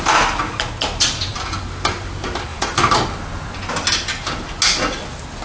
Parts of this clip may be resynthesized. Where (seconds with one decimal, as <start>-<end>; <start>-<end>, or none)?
1.3-2.1; 2.5-3.0